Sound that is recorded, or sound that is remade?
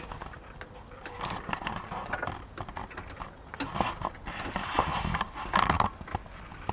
recorded